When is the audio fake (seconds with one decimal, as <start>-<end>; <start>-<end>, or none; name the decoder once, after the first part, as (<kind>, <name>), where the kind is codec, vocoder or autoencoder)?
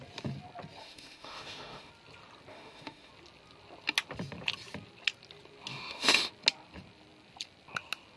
0.8-1.9 (autoencoder, DAC-VAE); 2.5-3.1; 5.7-6.3